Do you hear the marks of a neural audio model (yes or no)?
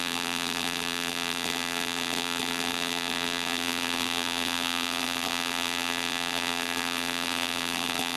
yes